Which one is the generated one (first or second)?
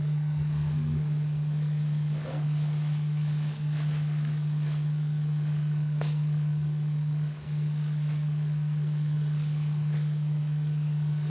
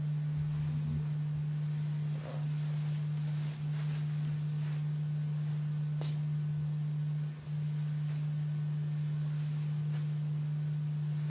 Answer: first